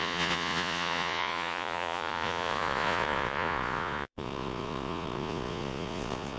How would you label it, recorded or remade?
remade